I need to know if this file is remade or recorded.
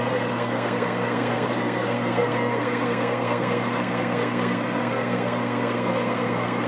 remade